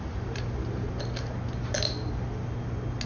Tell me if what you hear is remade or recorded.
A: recorded